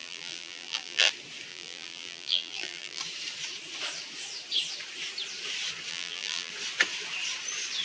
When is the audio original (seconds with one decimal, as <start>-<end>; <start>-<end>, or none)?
1.1-1.5; 3.0-5.9; 6.5-7.8